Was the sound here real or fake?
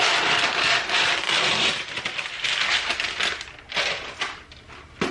real